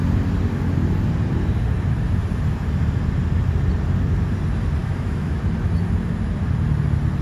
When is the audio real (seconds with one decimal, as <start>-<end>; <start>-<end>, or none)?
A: 0.0-4.8; 5.4-7.2